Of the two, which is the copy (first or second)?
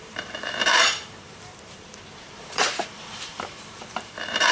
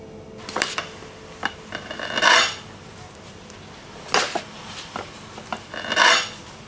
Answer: first